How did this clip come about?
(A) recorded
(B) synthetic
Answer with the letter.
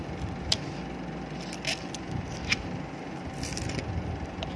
B